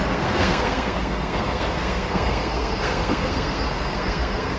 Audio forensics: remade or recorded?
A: remade